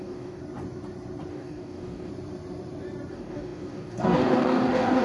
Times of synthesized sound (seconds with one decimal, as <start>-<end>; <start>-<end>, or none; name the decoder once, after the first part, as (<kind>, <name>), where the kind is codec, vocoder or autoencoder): 0.0-0.4 (codec, DAC); 1.3-2.1; 3.1-5.0